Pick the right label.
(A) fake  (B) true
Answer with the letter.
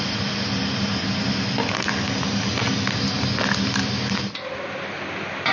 B